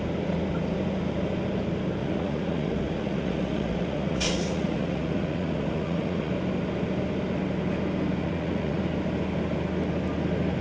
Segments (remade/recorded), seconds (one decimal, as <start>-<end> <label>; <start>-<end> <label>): 0.0-2.0 recorded; 2.0-6.3 remade; 6.3-8.2 recorded; 8.2-8.8 remade; 8.8-10.6 recorded